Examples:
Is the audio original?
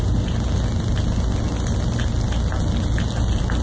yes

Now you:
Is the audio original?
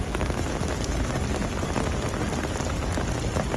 yes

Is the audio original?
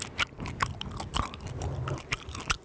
yes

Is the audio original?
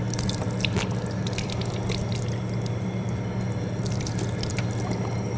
yes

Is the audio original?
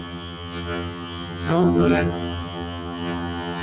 no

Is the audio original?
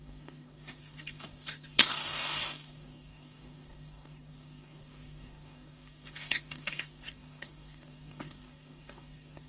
no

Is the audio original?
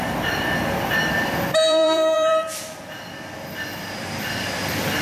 no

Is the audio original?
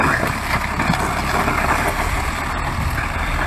yes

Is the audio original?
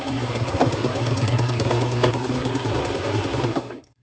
no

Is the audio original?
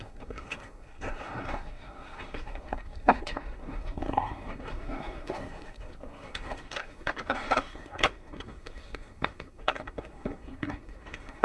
no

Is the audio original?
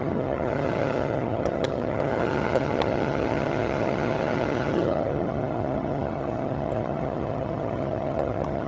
no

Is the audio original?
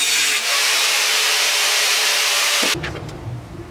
no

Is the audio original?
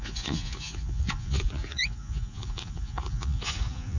no